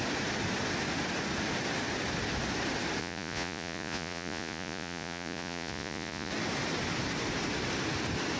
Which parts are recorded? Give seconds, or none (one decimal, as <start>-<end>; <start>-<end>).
0.0-3.0; 6.3-8.4